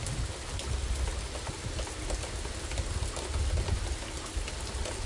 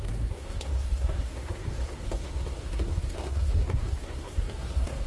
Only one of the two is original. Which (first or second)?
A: first